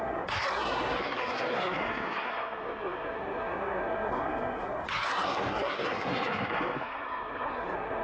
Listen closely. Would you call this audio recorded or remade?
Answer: remade